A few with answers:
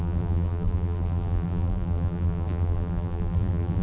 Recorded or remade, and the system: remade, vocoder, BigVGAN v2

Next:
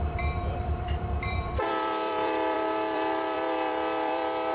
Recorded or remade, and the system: remade, vocoder, BigVGAN v2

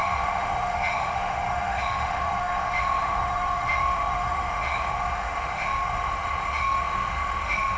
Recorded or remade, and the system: remade, autoencoder, DAC-VAE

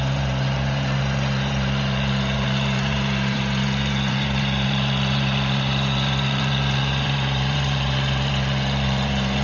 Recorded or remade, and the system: remade, vocoder, BigVGAN v2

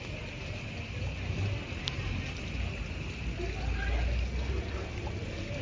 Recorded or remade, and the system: recorded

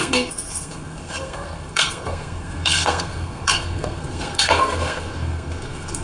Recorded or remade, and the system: remade, codec, SNAC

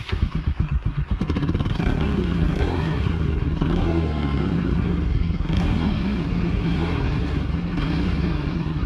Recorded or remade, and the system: remade, codec, SNAC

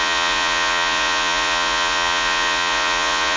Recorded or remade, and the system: remade, vocoder, Vocos